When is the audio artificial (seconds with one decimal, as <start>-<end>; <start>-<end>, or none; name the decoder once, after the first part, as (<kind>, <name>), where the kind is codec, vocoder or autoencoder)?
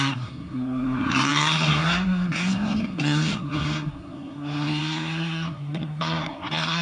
0.0-6.8 (codec, SNAC)